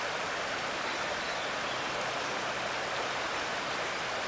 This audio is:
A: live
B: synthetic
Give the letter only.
A